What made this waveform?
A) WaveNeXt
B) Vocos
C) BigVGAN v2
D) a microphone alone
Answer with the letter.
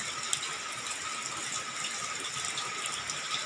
D